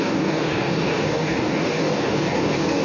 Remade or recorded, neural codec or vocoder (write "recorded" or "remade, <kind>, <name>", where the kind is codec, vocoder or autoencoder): remade, codec, DAC